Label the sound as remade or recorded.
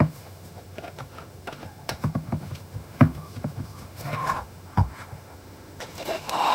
remade